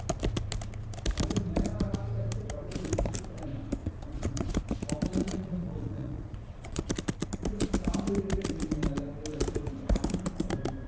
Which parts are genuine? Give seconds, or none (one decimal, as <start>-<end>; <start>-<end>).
0.0-3.8; 4.5-5.2; 6.9-10.9